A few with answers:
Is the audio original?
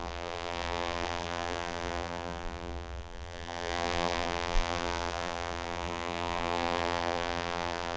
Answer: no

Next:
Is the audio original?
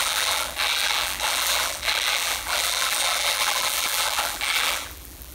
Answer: no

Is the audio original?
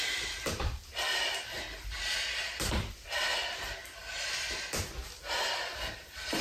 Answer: yes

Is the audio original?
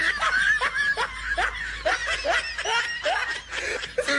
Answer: yes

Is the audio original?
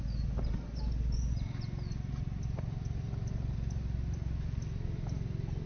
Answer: yes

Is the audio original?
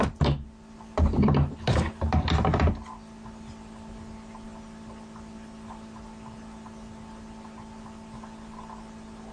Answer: yes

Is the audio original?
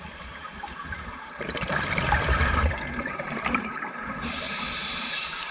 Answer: no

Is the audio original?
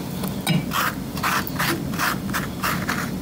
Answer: yes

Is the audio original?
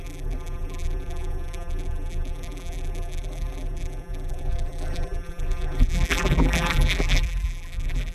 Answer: no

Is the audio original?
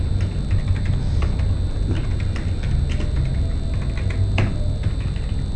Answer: yes